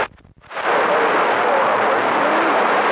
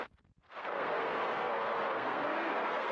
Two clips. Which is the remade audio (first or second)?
second